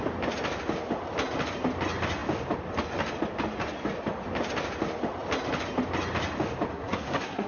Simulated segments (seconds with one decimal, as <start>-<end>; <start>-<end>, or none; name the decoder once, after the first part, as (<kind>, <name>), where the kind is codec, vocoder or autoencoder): 6.7-7.5 (codec, SNAC)